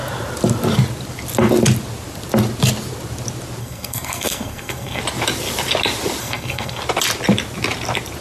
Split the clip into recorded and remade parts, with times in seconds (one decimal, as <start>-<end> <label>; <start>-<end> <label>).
0.0-3.6 recorded; 3.6-5.0 remade; 5.0-6.2 recorded; 6.2-6.8 remade; 6.8-8.2 recorded

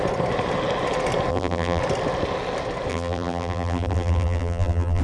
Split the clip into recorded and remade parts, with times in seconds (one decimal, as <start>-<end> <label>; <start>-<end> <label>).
0.0-1.3 recorded; 1.3-1.8 remade; 1.8-2.9 recorded; 2.9-5.0 remade

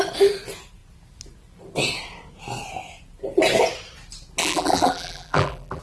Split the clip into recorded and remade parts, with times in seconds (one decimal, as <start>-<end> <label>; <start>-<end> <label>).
0.0-4.4 recorded; 4.4-5.8 remade

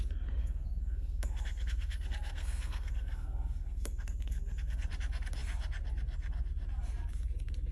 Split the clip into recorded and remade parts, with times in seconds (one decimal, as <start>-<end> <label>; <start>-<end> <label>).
0.0-0.4 recorded; 0.4-4.9 remade; 4.9-7.7 recorded